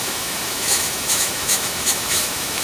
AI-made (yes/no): yes